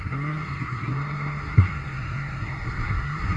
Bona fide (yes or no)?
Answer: no